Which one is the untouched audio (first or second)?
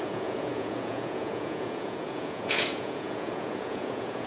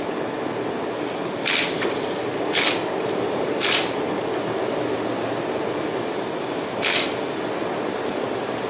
second